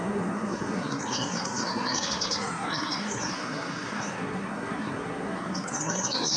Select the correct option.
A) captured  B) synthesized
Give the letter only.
B